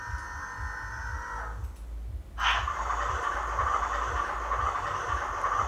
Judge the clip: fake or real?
real